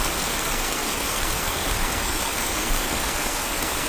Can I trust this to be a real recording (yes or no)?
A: no